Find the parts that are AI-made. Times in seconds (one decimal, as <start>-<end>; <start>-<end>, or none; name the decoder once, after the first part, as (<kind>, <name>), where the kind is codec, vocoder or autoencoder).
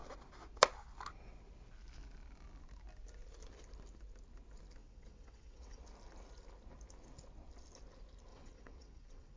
4.8-5.8 (vocoder, WaveNeXt); 8.3-9.4